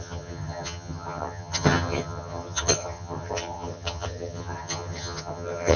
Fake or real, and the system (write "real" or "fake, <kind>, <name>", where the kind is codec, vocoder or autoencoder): fake, vocoder, HiFi-GAN